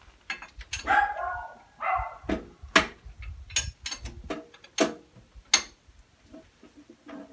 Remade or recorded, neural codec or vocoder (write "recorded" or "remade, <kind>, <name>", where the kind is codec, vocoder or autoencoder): recorded